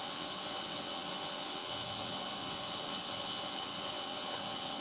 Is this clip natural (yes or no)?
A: no